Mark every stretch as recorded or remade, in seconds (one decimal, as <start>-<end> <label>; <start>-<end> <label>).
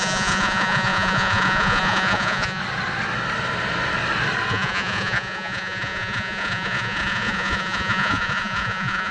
0.0-2.6 remade; 2.6-4.5 recorded; 4.5-9.1 remade